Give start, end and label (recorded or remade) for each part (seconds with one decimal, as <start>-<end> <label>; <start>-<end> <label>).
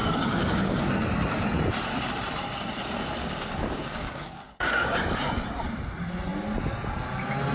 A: 0.0-0.9 remade; 0.9-3.2 recorded; 3.2-5.0 remade; 5.0-7.5 recorded